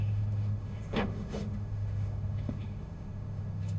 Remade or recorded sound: remade